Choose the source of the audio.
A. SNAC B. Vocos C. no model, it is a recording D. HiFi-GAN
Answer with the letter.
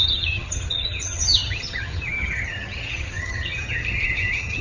D